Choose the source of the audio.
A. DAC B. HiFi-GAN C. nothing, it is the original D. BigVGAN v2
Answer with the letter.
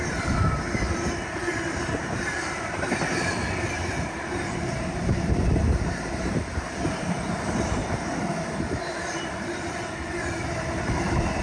D